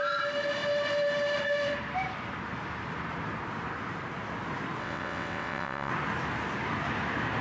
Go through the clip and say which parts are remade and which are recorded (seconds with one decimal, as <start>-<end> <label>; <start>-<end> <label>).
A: 0.0-4.8 recorded; 4.8-5.9 remade; 5.9-7.4 recorded